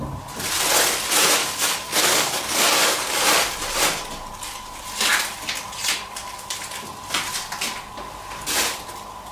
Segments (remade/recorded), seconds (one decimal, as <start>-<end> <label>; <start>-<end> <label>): 0.0-1.4 recorded; 1.4-3.2 remade; 3.2-9.3 recorded